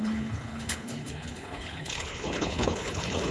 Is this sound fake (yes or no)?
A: yes